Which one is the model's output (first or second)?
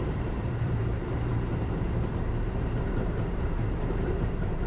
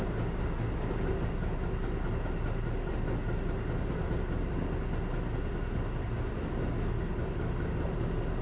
first